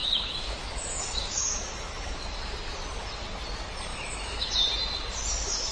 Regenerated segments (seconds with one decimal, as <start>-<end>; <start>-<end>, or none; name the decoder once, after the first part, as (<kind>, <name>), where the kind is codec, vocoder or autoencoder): 0.0-1.6 (autoencoder, DAC-VAE); 3.9-4.5